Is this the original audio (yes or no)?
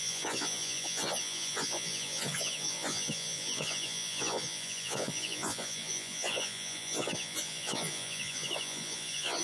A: no